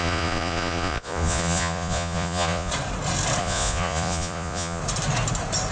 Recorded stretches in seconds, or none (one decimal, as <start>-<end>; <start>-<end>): 2.7-3.4; 4.8-5.7

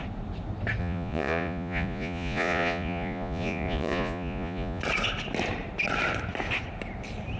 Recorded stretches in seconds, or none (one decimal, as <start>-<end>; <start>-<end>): 0.0-0.8; 4.8-7.4

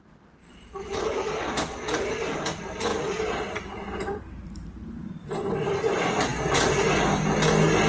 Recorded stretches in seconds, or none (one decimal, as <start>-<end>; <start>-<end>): 0.0-0.4; 1.0-2.9; 5.8-7.9

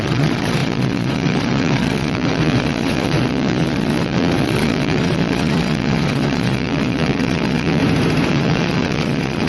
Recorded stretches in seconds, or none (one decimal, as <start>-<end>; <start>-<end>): 7.8-8.3

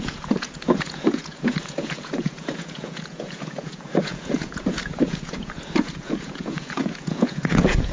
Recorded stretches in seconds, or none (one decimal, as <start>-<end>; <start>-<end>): none

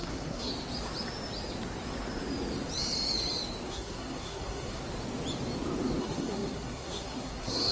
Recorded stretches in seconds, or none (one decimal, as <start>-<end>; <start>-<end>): 0.5-3.7; 4.8-6.0

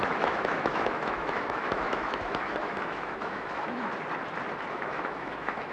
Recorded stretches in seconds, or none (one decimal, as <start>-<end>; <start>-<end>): 3.9-4.7

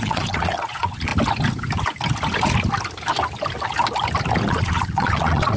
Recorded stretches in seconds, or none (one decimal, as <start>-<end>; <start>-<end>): 1.1-4.5